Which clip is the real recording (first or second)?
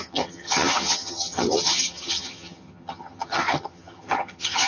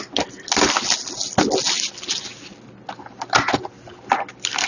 second